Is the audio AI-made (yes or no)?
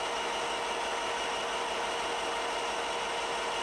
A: no